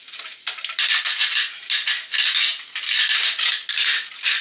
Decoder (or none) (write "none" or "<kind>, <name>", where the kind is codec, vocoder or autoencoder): none